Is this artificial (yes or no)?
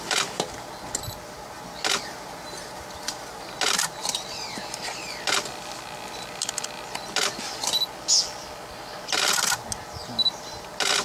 no